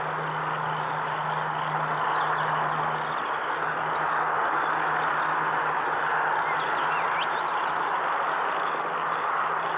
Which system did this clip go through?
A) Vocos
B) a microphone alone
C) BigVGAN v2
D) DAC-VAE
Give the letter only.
B